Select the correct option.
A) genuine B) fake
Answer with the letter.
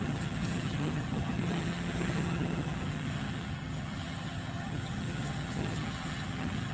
B